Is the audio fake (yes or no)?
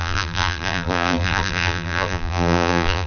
yes